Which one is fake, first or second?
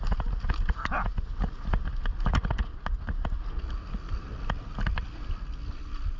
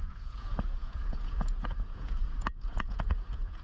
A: second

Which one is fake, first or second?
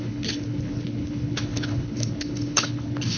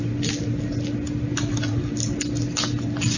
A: first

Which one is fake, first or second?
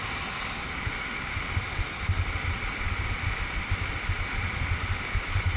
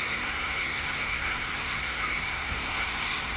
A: second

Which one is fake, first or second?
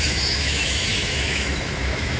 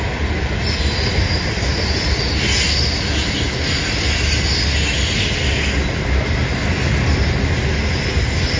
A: first